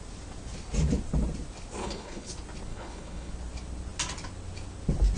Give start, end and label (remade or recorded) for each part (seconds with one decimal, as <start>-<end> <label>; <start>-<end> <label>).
0.0-1.8 recorded; 1.8-2.3 remade; 2.3-2.7 recorded; 2.7-3.3 remade; 3.3-5.2 recorded

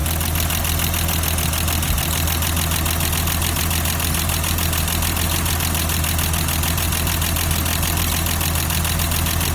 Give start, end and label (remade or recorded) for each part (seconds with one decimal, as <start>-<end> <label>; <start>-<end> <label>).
0.0-9.5 recorded

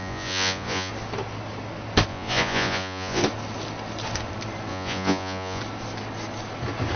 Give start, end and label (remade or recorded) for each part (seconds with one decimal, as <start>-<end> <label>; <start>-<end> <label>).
0.0-0.9 remade; 0.9-2.1 recorded; 2.1-3.2 remade; 3.2-4.7 recorded; 4.7-5.6 remade; 5.6-7.0 recorded

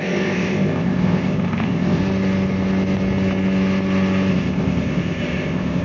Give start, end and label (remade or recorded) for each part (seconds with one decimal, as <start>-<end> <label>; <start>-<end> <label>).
0.0-2.0 remade; 2.0-4.3 recorded; 4.3-5.8 remade

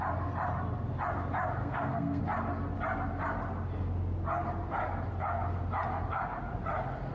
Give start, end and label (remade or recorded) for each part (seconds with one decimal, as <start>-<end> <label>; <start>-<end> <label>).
0.0-1.6 recorded; 1.6-2.2 remade; 2.2-7.1 recorded

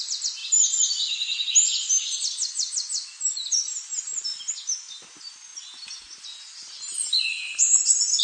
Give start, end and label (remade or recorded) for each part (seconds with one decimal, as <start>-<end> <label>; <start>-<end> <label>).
0.0-8.2 recorded